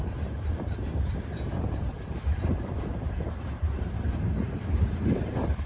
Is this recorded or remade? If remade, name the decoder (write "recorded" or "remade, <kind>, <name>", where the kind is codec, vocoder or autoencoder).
remade, vocoder, BigVGAN v2